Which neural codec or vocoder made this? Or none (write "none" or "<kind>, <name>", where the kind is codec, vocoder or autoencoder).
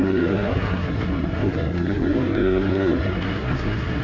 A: codec, SNAC